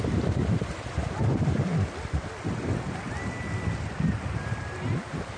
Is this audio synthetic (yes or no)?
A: no